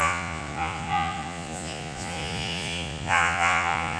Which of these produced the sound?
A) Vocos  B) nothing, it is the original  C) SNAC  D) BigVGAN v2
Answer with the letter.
A